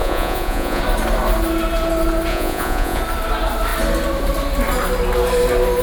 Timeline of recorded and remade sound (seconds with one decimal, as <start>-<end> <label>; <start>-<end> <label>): 0.0-0.8 remade; 0.8-2.3 recorded; 2.3-3.0 remade; 3.0-5.8 recorded